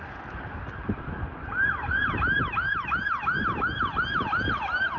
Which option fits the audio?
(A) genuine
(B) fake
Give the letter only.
A